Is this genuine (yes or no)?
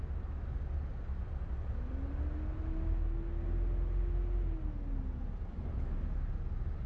yes